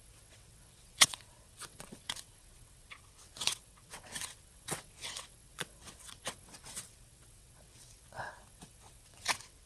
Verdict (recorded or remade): remade